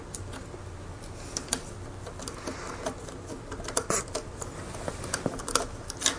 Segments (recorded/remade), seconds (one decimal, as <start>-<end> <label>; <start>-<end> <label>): 0.0-6.2 recorded